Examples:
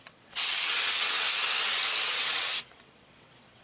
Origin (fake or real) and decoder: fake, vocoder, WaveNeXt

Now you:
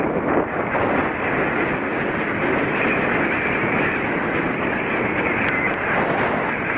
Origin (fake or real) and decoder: real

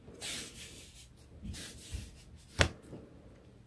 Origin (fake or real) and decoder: real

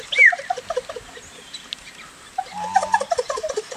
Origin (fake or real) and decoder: real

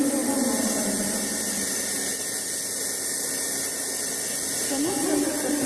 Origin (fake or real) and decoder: real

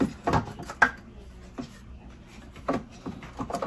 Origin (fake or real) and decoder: real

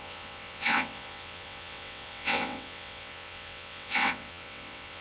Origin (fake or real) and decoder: fake, vocoder, WaveNeXt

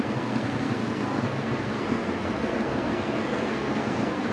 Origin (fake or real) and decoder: fake, codec, SNAC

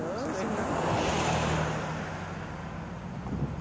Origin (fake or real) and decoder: real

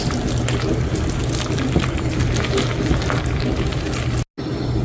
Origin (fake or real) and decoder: real